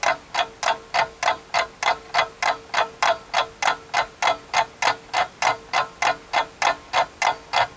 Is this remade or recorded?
recorded